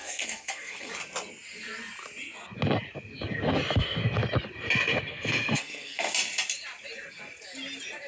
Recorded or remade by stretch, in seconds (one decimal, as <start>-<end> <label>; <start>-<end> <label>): 0.0-0.9 remade; 0.9-5.1 recorded; 5.1-6.1 remade; 6.1-8.1 recorded